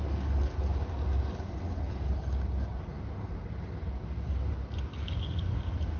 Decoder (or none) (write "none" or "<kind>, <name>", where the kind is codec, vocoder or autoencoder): none